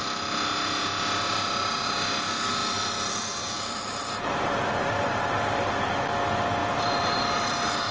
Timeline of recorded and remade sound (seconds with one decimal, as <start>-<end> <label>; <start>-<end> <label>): 0.0-2.6 recorded; 2.6-5.7 remade; 5.7-6.6 recorded; 6.6-7.9 remade

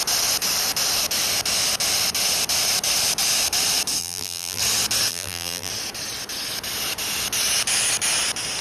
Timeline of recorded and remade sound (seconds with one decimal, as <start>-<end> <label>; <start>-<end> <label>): 0.0-4.0 recorded; 4.0-4.6 remade; 4.6-5.1 recorded; 5.1-5.7 remade; 5.7-8.6 recorded

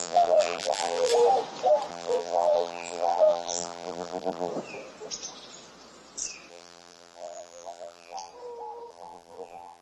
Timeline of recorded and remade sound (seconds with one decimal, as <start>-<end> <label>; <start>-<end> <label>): 0.0-1.1 remade; 1.1-1.9 recorded; 1.9-4.5 remade; 4.5-6.5 recorded; 6.5-8.3 remade; 8.3-8.9 recorded; 8.9-9.8 remade

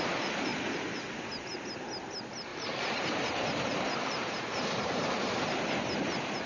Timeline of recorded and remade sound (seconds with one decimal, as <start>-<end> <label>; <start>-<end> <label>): 0.0-2.5 recorded; 2.5-6.5 remade

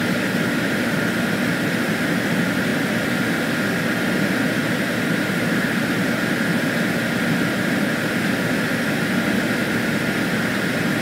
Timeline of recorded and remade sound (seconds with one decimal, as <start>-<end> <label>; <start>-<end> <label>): 0.0-4.6 recorded; 4.6-5.8 remade; 5.8-11.0 recorded

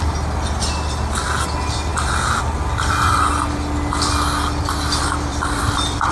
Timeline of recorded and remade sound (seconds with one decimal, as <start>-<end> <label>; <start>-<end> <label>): 0.0-5.3 recorded; 5.3-6.1 remade

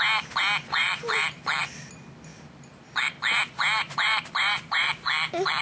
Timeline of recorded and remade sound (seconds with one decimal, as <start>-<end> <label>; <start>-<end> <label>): 0.0-0.8 recorded; 0.8-1.4 remade; 1.4-2.3 recorded; 2.3-3.2 remade; 3.2-3.8 recorded; 3.8-4.9 remade; 4.9-5.6 recorded